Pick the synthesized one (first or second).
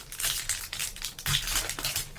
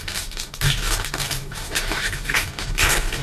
second